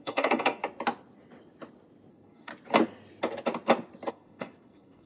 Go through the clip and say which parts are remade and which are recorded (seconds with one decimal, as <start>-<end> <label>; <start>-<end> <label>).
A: 0.0-0.6 remade; 0.6-2.1 recorded; 2.1-2.5 remade; 2.5-4.1 recorded; 4.1-5.1 remade